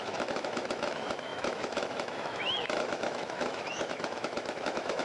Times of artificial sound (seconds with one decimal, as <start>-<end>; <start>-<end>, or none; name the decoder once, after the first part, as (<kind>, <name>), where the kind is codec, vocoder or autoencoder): 0.0-5.0 (autoencoder, DAC-VAE)